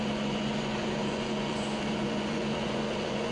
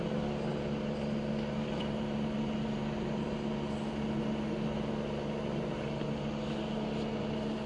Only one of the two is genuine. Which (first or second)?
second